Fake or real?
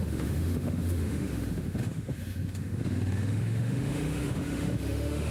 fake